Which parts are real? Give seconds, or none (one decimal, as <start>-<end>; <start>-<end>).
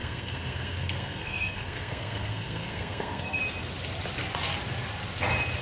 3.4-5.6